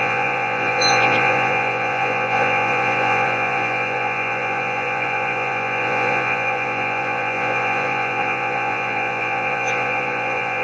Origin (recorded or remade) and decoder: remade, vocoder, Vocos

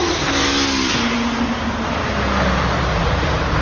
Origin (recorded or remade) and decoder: recorded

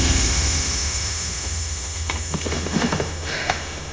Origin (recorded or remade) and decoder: remade, autoencoder, DAC-VAE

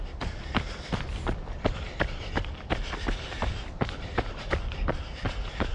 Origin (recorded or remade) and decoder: remade, vocoder, BigVGAN v2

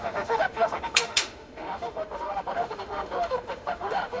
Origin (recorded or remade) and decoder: remade, autoencoder, DAC-VAE